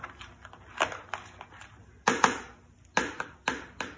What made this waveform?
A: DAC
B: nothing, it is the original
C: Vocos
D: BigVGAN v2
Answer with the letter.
B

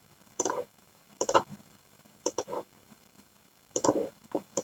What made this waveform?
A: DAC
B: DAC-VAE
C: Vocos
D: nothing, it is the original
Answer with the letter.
A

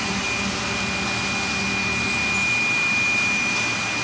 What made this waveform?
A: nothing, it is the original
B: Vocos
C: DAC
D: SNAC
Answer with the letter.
A